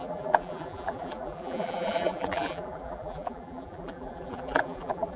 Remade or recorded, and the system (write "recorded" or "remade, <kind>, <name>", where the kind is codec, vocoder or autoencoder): remade, vocoder, BigVGAN v2